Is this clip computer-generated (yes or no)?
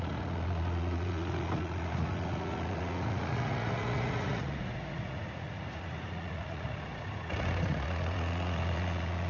yes